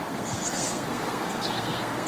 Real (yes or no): no